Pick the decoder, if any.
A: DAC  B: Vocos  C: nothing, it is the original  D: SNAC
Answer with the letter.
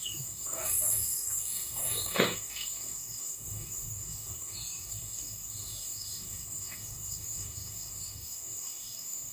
A